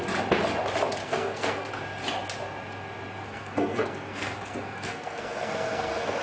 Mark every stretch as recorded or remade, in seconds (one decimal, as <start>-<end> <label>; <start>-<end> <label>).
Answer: 0.0-1.0 recorded; 1.0-1.7 remade; 1.7-3.2 recorded; 3.2-6.2 remade